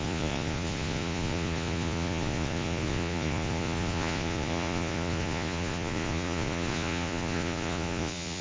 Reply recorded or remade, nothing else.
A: remade